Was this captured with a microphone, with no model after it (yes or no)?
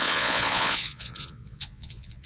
no